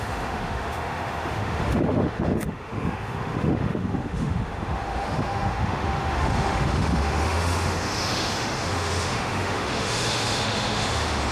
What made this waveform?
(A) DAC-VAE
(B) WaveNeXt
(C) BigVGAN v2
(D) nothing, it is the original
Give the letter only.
A